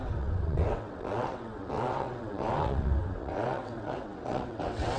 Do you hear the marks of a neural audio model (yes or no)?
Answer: yes